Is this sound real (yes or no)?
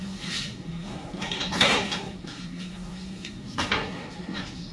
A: no